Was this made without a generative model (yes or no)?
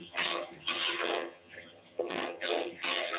no